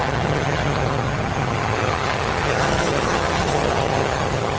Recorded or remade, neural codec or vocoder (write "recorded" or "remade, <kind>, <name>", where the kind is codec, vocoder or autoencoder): remade, vocoder, HiFi-GAN